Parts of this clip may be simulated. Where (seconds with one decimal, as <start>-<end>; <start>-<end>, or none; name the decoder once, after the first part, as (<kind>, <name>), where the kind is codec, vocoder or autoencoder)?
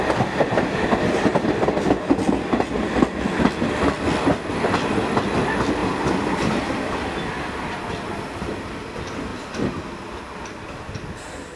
1.3-2.0 (vocoder, BigVGAN v2); 5.8-6.6